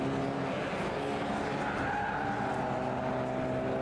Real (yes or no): yes